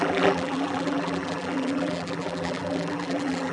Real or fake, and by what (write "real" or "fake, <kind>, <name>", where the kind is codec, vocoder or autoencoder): fake, vocoder, BigVGAN v2